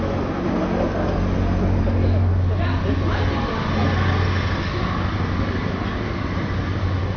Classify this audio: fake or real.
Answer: real